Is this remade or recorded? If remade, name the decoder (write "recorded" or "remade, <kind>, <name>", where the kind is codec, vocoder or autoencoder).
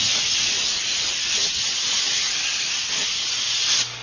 recorded